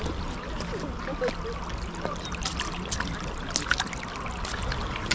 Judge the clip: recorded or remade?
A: recorded